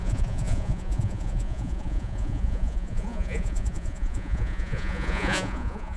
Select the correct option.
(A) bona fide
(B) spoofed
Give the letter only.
B